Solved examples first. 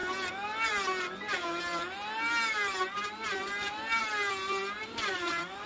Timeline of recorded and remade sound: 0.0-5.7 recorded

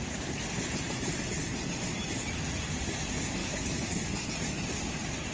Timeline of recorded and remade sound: 0.0-3.4 recorded; 3.4-3.9 remade; 3.9-5.3 recorded

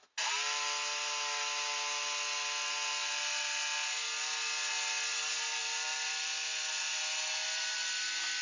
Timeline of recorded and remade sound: 0.0-5.6 recorded; 5.6-7.0 remade; 7.0-8.4 recorded

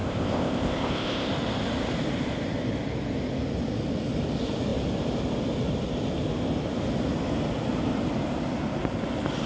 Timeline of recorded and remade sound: 0.0-1.3 remade; 1.3-9.5 recorded

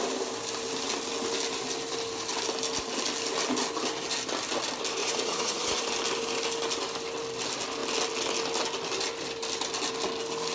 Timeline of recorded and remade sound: 0.0-5.0 recorded; 5.0-5.8 remade; 5.8-10.5 recorded

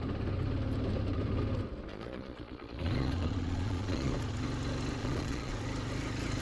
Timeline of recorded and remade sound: 0.0-1.9 recorded; 1.9-4.1 remade; 4.1-5.0 recorded; 5.0-5.5 remade; 5.5-6.4 recorded

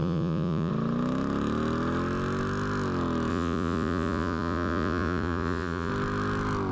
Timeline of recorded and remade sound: 0.0-0.7 remade; 0.7-3.3 recorded; 3.3-5.9 remade; 5.9-6.7 recorded

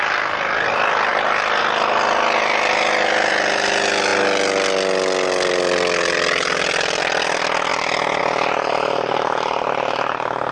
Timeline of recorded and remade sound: 0.0-1.1 recorded; 1.1-1.6 remade; 1.6-7.7 recorded; 7.7-8.2 remade; 8.2-10.5 recorded